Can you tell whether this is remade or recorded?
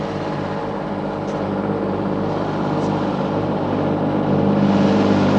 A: remade